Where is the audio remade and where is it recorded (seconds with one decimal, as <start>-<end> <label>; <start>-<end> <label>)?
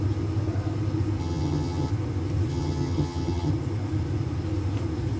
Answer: 0.0-1.2 recorded; 1.2-1.9 remade; 1.9-2.5 recorded; 2.5-3.5 remade; 3.5-5.2 recorded